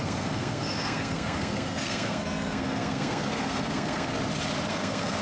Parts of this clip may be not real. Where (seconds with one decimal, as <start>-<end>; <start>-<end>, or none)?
0.0-4.1; 4.7-5.2